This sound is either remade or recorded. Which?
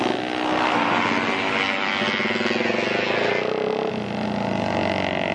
recorded